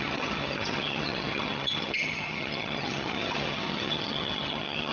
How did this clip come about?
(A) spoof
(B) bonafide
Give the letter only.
A